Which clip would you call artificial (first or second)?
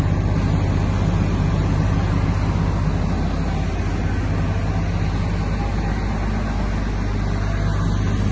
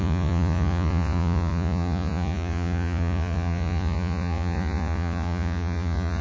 second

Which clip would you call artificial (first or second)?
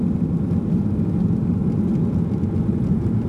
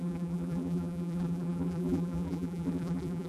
second